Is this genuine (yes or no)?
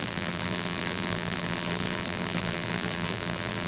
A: no